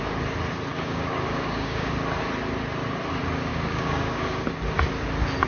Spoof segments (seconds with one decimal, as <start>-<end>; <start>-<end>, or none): 0.7-1.9; 3.5-4.5

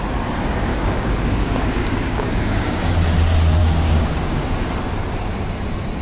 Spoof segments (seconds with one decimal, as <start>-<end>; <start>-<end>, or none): 0.7-2.9; 3.6-4.7

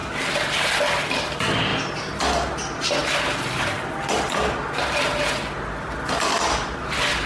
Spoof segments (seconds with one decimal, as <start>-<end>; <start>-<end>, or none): none

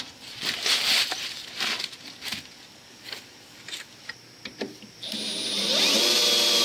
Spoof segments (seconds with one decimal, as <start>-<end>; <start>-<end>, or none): none

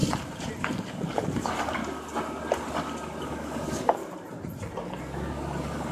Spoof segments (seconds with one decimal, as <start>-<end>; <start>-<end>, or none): 0.6-1.8; 3.2-4.0; 5.0-5.9